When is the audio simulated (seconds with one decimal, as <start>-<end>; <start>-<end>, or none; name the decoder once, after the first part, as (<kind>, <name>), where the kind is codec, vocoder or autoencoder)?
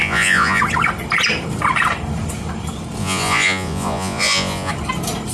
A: 0.0-0.6 (vocoder, Vocos); 3.0-4.7